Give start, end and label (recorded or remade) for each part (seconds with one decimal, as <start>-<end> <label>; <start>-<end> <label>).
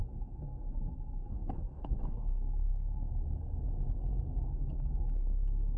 0.0-3.1 remade; 3.1-4.4 recorded; 4.4-5.8 remade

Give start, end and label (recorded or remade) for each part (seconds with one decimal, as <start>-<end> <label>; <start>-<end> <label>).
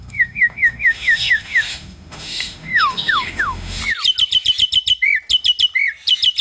0.0-3.8 remade; 3.8-6.4 recorded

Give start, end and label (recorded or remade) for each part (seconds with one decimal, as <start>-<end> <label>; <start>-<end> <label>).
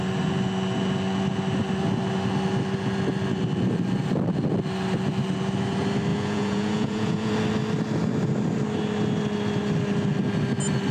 0.0-6.1 recorded; 6.1-7.3 remade; 7.3-10.9 recorded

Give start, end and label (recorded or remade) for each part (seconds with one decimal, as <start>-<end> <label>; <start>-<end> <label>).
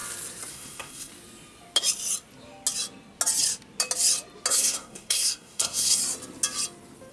0.0-0.5 recorded; 0.5-1.1 remade; 1.1-4.5 recorded; 4.5-6.0 remade; 6.0-7.1 recorded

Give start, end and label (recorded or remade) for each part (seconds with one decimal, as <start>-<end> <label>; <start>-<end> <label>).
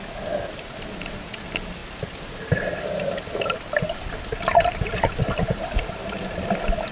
0.0-6.9 recorded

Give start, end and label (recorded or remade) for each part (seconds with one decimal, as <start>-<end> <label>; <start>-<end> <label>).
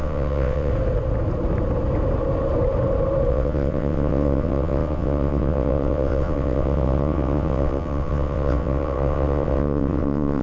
0.0-0.7 remade; 0.7-3.3 recorded; 3.3-10.4 remade